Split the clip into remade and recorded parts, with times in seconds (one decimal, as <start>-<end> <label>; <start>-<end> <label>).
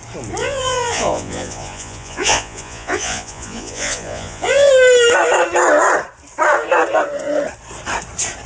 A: 0.0-0.4 recorded; 0.4-4.7 remade; 4.7-8.5 recorded